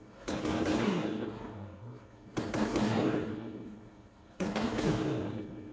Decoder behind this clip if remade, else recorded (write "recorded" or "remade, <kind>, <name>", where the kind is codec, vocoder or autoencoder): remade, codec, SNAC